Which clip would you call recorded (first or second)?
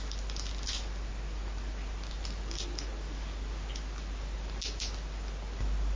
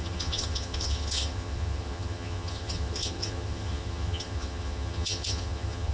first